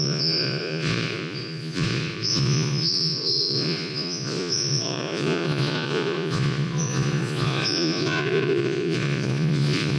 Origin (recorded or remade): remade